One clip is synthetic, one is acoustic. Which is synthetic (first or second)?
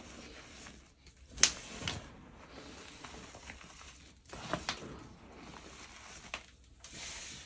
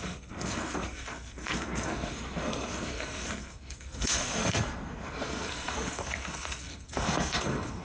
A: second